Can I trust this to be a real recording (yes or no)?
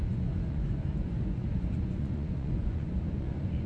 no